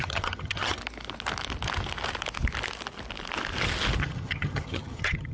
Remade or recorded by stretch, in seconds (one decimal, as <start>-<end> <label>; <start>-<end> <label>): 0.0-0.8 remade; 0.8-4.0 recorded; 4.0-5.3 remade